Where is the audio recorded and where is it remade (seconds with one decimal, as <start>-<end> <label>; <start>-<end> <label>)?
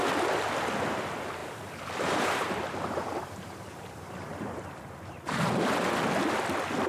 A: 0.0-1.4 recorded; 1.4-5.5 remade; 5.5-6.9 recorded